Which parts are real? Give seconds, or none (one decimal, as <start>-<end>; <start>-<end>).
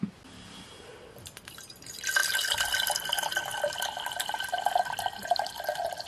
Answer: 0.0-6.1